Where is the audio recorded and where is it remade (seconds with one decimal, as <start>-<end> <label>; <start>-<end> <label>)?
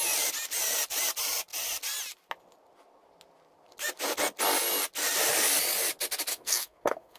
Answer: 0.0-6.3 recorded; 6.3-7.2 remade